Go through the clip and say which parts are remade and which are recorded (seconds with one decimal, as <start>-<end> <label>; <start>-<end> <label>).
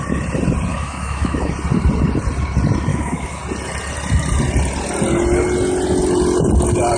0.0-0.7 recorded; 0.7-1.5 remade; 1.5-2.9 recorded; 2.9-3.4 remade; 3.4-7.0 recorded